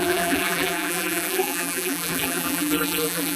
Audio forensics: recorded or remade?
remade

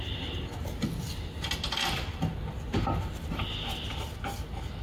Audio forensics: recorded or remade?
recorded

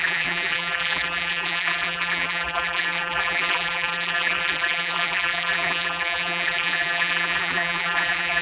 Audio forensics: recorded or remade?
remade